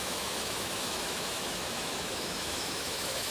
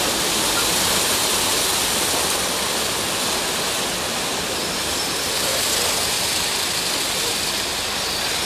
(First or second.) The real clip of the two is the second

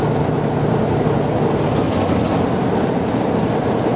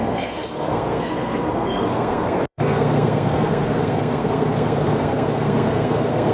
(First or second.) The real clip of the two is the first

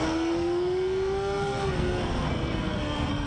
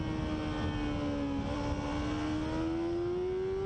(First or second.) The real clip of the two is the second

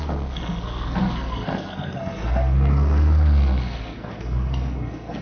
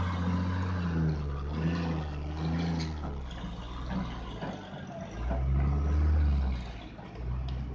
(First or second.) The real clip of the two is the second